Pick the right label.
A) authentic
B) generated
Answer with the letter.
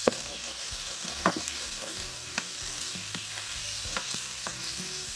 B